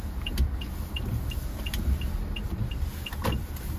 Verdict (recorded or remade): recorded